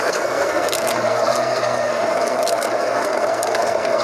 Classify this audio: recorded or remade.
remade